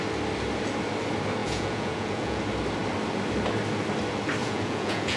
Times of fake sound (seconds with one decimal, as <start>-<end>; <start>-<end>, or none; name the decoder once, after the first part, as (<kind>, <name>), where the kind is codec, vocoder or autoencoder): 1.4-2.4 (vocoder, Vocos); 4.4-5.2

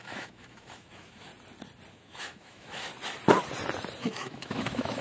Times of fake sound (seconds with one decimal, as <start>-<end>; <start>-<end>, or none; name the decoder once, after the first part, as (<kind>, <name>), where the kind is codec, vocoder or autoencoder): 0.0-1.3 (autoencoder, DAC-VAE); 1.9-2.9; 4.0-5.0

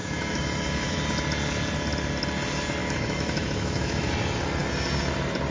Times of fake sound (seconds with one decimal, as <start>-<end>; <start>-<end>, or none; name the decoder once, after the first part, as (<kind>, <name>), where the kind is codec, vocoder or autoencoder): 0.0-1.0 (autoencoder, DAC-VAE); 2.8-4.1

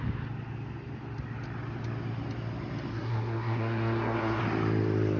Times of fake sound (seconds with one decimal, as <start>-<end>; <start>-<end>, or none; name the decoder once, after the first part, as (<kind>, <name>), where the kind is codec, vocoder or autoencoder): 2.9-4.4 (codec, SNAC)

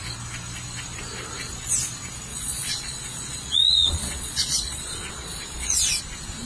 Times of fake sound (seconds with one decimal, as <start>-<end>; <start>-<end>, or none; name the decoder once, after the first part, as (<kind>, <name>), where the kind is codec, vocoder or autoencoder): 2.3-6.0 (vocoder, Vocos)

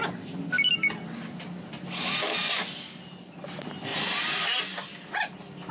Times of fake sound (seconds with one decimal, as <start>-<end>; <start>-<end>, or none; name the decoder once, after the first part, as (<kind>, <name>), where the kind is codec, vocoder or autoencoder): 3.9-4.6 (vocoder, BigVGAN v2)

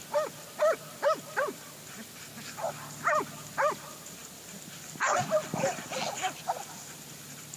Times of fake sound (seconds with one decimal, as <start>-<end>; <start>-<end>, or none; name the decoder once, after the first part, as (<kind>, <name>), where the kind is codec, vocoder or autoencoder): none

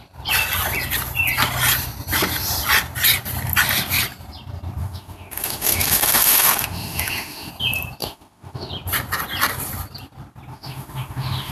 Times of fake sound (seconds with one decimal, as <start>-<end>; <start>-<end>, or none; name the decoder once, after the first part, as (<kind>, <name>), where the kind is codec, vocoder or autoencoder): 4.8-7.5 (autoencoder, DAC-VAE); 8.0-8.7; 10.5-11.5